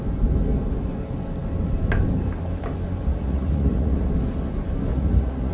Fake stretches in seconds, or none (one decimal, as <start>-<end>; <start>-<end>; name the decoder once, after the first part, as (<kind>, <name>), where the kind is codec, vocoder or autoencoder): 3.1-4.1 (vocoder, Vocos); 4.9-5.5